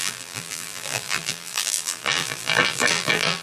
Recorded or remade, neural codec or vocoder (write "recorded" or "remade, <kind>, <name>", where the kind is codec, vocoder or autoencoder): remade, vocoder, BigVGAN v2